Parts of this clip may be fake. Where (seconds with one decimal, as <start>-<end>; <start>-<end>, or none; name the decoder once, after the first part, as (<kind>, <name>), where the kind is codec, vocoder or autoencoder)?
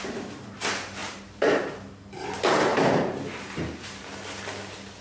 1.0-1.7 (vocoder, BigVGAN v2)